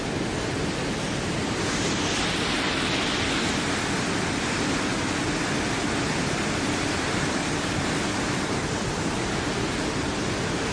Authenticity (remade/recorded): recorded